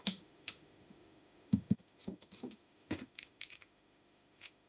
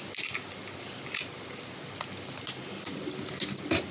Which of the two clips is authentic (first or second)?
second